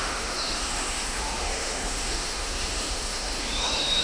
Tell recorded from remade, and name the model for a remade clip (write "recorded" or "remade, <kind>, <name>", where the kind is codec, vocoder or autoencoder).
remade, autoencoder, DAC-VAE